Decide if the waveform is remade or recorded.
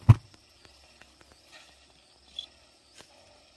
recorded